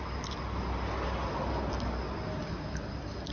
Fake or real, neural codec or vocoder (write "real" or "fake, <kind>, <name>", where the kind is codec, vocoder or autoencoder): real